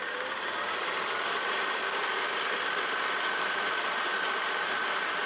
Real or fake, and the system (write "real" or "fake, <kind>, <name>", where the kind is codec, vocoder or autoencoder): real